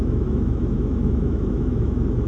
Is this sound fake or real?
fake